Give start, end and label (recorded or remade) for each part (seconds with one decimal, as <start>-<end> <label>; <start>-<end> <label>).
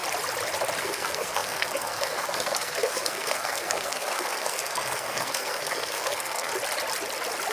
0.0-0.8 recorded; 0.8-6.5 remade; 6.5-7.5 recorded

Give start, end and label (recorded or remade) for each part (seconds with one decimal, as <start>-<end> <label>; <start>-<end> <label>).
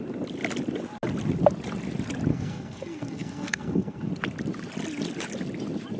0.0-2.3 recorded; 2.3-4.1 remade; 4.1-6.0 recorded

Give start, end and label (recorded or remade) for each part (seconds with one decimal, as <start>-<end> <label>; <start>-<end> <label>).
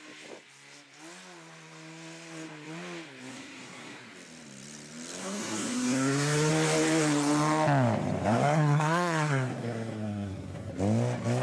0.0-3.3 recorded; 3.3-4.0 remade; 4.0-5.2 recorded; 5.2-6.5 remade; 6.5-8.2 recorded; 8.2-10.7 remade; 10.7-11.4 recorded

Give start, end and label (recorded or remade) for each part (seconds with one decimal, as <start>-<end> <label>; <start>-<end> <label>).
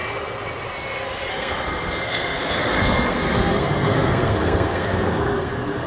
0.0-1.3 recorded; 1.3-5.9 remade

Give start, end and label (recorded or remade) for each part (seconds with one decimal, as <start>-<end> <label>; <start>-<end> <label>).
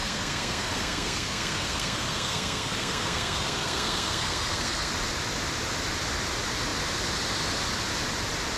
0.0-4.9 remade; 4.9-8.6 recorded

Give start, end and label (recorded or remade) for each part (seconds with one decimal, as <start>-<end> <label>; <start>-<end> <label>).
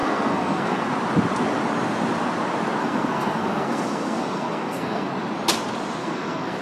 0.0-0.9 remade; 0.9-2.8 recorded; 2.8-5.1 remade; 5.1-6.0 recorded; 6.0-6.6 remade